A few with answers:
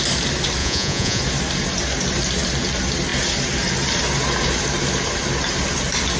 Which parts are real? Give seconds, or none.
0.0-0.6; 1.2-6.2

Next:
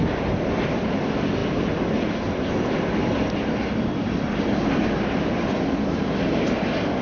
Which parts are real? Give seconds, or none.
0.0-7.0

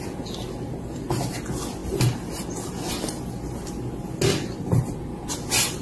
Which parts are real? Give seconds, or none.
0.0-5.8

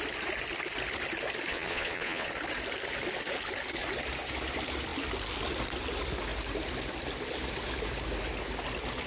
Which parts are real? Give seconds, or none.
0.0-1.5; 2.3-9.1

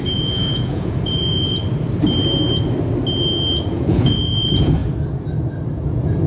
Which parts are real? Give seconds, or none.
1.6-3.7; 4.8-5.7

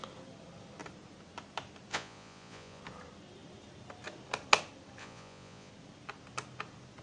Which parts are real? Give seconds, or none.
0.0-1.9; 2.8-5.0; 5.7-7.0

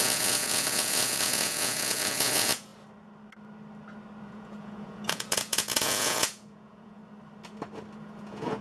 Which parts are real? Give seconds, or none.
2.7-4.2; 7.0-8.0

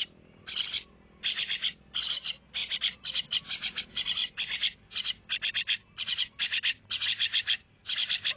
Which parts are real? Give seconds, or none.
0.0-8.4